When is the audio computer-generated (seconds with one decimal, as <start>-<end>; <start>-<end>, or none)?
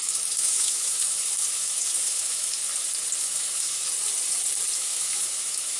0.0-2.6; 3.2-3.8; 4.8-5.8